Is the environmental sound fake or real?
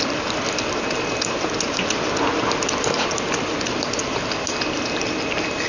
real